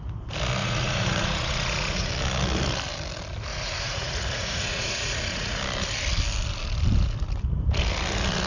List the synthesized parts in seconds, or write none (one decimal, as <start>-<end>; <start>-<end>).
0.6-2.1; 3.5-5.6